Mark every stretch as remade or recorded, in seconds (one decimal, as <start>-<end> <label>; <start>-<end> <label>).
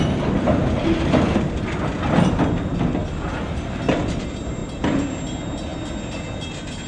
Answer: 0.0-4.6 recorded; 4.6-5.1 remade; 5.1-6.9 recorded